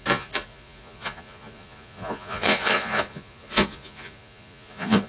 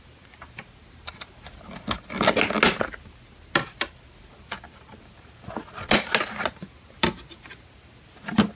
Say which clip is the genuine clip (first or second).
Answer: second